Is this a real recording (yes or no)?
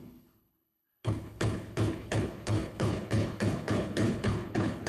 no